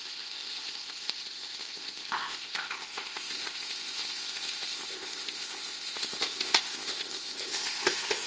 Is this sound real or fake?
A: fake